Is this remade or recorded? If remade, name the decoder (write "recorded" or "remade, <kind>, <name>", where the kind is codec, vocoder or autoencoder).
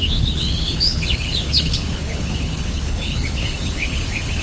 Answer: remade, codec, HILCodec